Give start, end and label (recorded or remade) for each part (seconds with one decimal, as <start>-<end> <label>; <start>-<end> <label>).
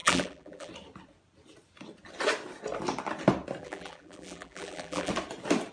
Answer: 0.0-0.7 remade; 0.7-3.6 recorded; 3.6-5.1 remade; 5.1-5.7 recorded